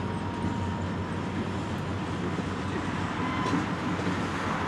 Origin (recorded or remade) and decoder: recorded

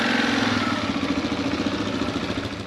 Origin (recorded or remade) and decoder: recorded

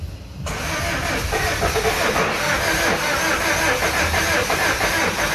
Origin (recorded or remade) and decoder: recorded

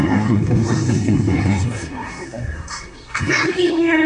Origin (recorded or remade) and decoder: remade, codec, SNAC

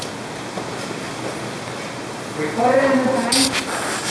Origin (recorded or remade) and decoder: recorded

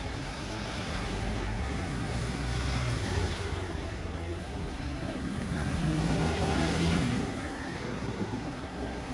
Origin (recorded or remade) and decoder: remade, codec, SNAC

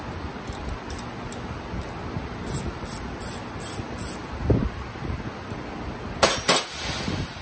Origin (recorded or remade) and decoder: recorded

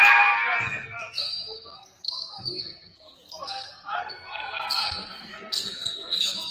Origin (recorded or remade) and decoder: remade, codec, SNAC